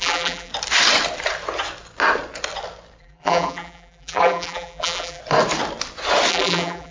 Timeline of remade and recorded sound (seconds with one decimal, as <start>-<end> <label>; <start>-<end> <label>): 0.0-0.5 remade; 0.5-3.0 recorded; 3.0-5.2 remade; 5.2-6.3 recorded; 6.3-6.9 remade